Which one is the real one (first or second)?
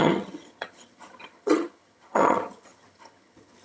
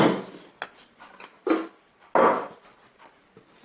second